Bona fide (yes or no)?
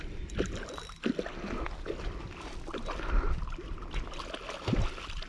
yes